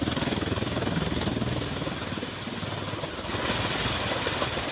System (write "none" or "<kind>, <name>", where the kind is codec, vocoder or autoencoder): none